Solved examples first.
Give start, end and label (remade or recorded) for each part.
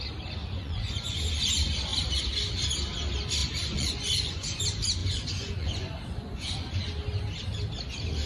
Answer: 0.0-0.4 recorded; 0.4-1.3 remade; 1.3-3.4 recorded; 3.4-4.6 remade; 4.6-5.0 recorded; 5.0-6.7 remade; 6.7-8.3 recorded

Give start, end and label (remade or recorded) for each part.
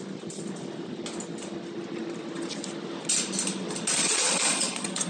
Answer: 0.0-4.0 recorded; 4.0-5.1 remade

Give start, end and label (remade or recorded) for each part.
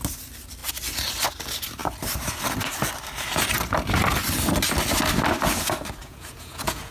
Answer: 0.0-6.0 recorded; 6.0-6.9 remade